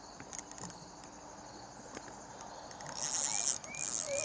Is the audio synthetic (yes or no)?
no